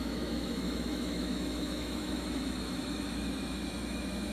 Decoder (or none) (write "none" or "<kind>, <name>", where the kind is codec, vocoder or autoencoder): autoencoder, DAC-VAE